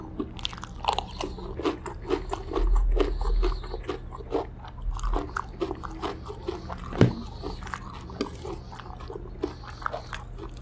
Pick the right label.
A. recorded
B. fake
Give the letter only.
A